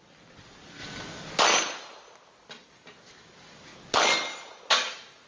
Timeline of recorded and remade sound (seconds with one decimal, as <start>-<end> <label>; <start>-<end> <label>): 0.0-5.3 recorded